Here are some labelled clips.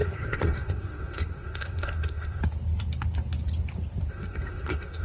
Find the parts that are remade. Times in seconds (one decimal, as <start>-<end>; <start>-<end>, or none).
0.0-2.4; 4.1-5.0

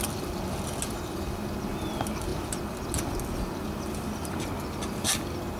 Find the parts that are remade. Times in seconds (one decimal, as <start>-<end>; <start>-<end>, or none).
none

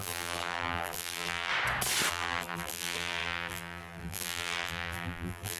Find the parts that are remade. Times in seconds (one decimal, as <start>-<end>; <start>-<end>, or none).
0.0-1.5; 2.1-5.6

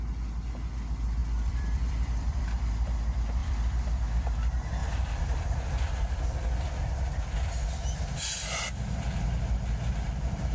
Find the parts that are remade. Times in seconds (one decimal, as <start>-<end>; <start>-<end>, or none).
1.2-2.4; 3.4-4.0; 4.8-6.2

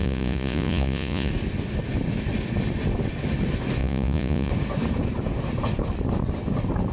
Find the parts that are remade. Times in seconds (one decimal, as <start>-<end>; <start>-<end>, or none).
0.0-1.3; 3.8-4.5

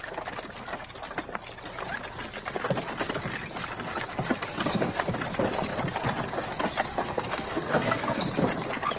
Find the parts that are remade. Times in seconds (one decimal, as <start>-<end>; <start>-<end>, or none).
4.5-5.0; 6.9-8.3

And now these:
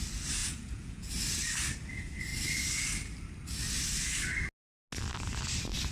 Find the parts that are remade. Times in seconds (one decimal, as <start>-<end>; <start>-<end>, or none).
0.4-1.1

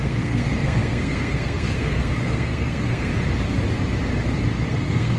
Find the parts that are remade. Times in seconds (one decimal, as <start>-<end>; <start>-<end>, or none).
0.0-3.1; 4.7-5.2